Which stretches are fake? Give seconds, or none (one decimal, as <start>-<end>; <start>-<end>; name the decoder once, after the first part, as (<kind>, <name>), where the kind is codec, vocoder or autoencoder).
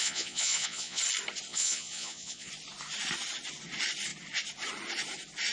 0.0-1.0 (vocoder, Vocos); 1.5-2.5